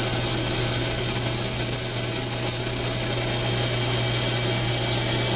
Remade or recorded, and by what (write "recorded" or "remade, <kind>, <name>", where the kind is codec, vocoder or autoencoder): recorded